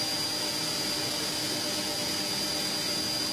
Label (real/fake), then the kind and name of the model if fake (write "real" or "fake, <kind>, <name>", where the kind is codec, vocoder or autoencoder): real